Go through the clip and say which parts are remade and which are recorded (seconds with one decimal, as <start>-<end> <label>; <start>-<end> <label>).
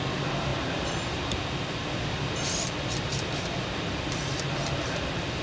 0.0-5.4 recorded